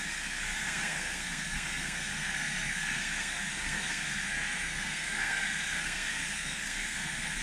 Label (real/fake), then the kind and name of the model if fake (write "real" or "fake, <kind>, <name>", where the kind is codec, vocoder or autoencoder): fake, codec, SNAC